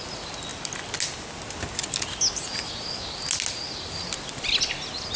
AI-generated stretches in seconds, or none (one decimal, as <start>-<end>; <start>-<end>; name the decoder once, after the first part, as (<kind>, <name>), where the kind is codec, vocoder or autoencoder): none